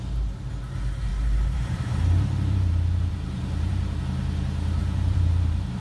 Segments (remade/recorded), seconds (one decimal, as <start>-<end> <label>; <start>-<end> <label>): 0.0-1.1 recorded; 1.1-4.0 remade; 4.0-4.8 recorded; 4.8-5.8 remade